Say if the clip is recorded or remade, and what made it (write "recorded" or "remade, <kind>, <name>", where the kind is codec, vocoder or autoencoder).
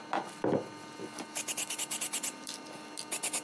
recorded